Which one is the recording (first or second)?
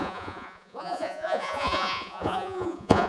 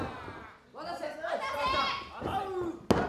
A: second